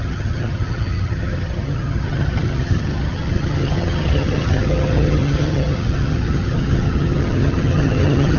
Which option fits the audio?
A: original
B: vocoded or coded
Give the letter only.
B